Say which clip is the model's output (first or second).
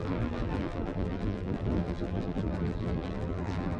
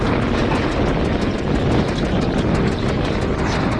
first